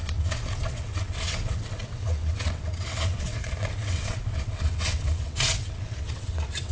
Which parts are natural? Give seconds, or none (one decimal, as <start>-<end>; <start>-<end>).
none